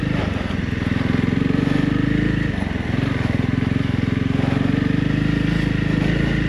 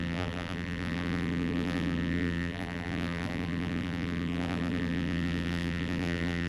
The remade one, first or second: second